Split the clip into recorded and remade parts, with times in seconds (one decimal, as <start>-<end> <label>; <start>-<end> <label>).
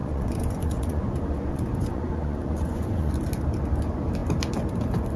0.0-3.1 remade; 3.1-5.2 recorded